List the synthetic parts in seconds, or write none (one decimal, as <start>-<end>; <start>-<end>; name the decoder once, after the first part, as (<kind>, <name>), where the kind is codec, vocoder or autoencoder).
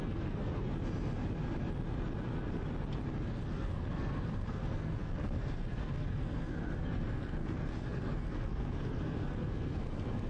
0.0-0.7 (codec, SNAC); 3.3-10.3